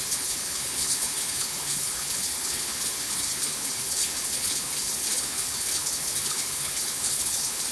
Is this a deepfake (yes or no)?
yes